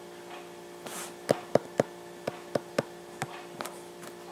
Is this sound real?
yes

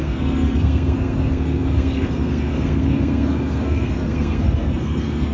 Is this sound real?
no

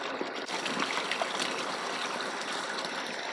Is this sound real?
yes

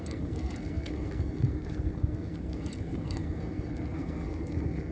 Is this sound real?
no